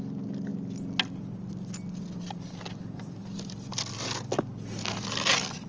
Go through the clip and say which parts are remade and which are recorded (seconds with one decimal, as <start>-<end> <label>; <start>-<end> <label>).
0.0-5.7 recorded